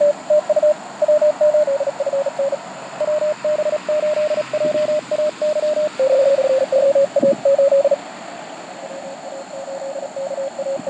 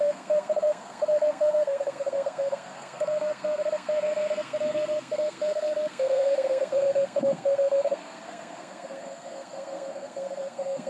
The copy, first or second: second